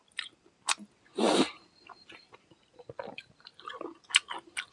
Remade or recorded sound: recorded